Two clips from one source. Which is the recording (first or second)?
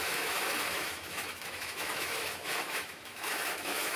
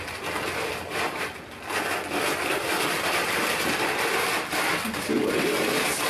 second